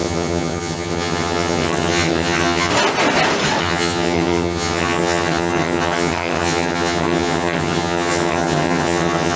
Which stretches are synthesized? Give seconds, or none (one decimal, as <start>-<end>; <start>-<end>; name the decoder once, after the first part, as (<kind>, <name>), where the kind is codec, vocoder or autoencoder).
0.0-2.7 (vocoder, HiFi-GAN); 3.6-9.4